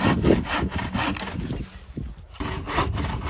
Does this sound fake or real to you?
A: real